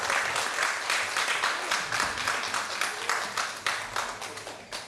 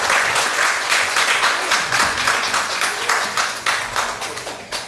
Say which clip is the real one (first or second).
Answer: first